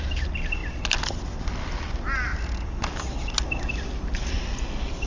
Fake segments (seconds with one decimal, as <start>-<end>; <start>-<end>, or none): none